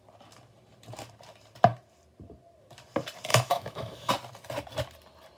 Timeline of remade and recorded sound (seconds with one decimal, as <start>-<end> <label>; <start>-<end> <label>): 0.0-3.3 recorded; 3.3-4.1 remade; 4.1-5.4 recorded